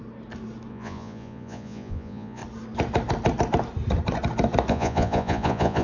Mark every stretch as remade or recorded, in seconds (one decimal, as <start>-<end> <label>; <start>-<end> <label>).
0.0-0.7 recorded; 0.7-2.4 remade; 2.4-4.7 recorded; 4.7-5.8 remade